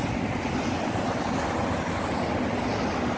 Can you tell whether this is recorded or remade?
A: recorded